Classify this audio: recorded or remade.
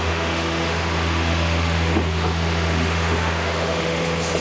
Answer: remade